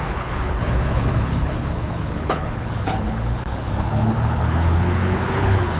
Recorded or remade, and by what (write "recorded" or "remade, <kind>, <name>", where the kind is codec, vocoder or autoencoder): remade, codec, HILCodec